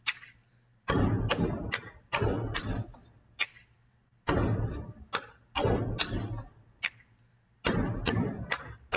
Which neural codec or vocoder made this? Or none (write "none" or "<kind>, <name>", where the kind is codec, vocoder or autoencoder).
none